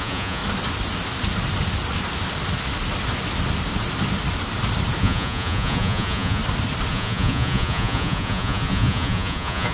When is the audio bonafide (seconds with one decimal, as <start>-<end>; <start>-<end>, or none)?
0.4-5.0; 6.4-6.9